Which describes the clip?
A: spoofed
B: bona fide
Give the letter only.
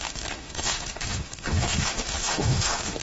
A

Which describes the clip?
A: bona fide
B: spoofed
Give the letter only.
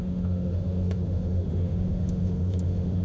B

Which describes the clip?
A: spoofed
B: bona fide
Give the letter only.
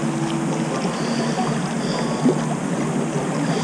B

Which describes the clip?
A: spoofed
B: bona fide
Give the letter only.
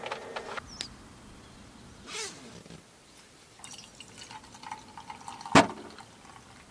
B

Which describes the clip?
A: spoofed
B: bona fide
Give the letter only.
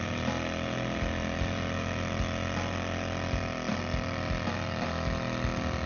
B